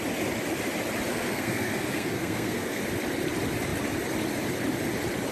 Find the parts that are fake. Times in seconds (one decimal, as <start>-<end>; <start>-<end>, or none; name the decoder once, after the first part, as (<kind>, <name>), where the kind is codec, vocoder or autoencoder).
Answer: 1.1-2.8 (codec, SNAC)